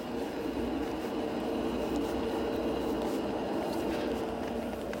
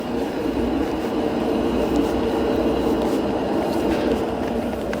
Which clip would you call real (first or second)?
first